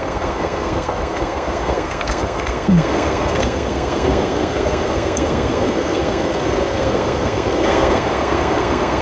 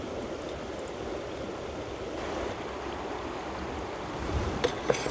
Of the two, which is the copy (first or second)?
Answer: first